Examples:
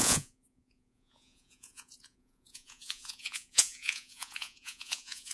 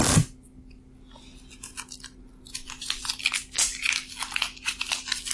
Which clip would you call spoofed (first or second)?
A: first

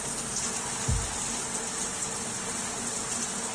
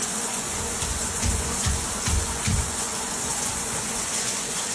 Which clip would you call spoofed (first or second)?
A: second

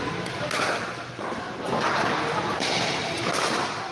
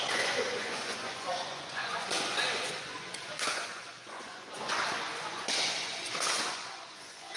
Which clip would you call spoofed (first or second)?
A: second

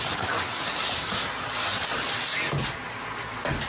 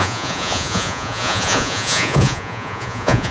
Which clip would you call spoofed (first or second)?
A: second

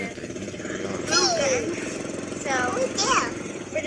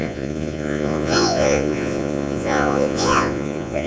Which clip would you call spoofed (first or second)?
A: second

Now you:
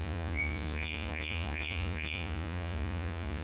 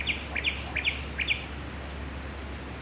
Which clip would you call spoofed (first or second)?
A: first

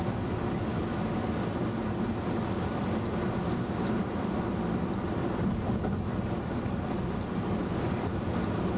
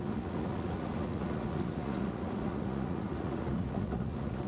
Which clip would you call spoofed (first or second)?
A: second